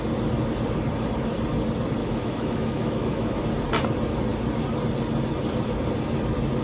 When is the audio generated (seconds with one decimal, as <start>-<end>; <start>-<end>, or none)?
2.0-3.4

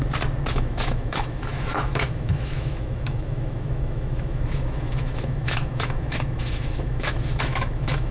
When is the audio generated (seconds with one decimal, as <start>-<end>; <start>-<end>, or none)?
0.5-8.1

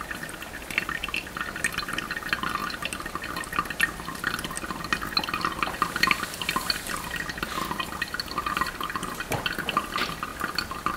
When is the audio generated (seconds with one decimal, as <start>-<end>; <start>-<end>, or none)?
none